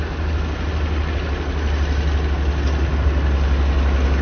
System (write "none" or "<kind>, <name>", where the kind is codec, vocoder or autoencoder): none